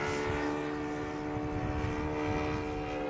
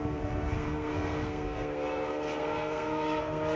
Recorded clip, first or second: first